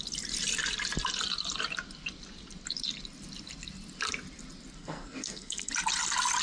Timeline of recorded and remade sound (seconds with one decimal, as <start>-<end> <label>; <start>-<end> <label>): 0.0-4.8 recorded; 4.8-5.7 remade; 5.7-6.4 recorded